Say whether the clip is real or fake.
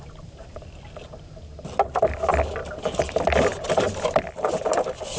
real